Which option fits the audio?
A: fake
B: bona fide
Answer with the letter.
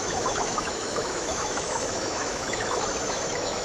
A